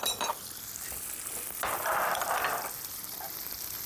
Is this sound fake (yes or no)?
no